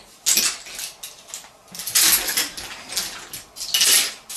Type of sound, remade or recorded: recorded